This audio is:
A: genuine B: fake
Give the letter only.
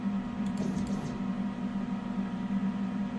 A